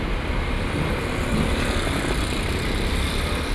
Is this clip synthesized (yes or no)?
no